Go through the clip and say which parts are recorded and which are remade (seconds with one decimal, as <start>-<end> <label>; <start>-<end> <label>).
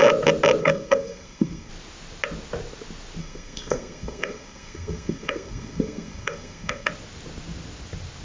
0.0-0.6 recorded; 0.6-1.7 remade; 1.7-3.2 recorded; 3.2-6.9 remade; 6.9-8.2 recorded